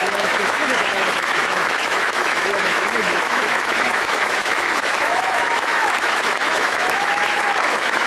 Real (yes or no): no